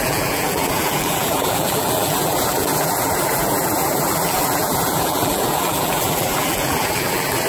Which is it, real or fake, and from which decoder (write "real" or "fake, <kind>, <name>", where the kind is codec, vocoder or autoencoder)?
fake, vocoder, BigVGAN v2